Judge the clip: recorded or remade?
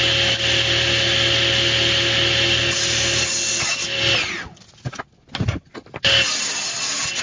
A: recorded